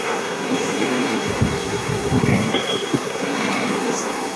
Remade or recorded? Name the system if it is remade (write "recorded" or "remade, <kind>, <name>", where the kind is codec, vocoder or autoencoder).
remade, codec, SNAC